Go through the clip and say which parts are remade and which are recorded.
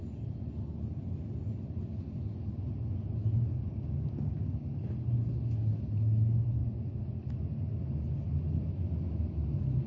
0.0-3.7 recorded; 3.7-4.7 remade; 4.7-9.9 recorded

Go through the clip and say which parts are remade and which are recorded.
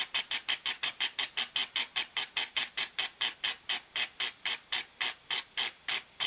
0.0-6.3 recorded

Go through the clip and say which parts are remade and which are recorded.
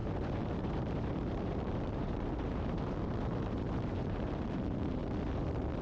0.0-5.0 remade; 5.0-5.8 recorded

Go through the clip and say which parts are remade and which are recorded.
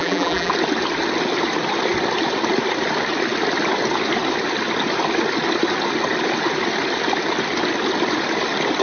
0.0-0.5 remade; 0.5-8.8 recorded